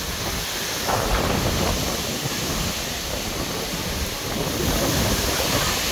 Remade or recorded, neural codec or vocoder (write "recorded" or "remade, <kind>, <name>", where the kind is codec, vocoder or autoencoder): recorded